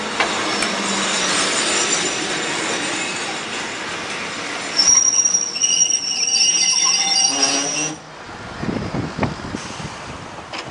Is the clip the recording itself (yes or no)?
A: yes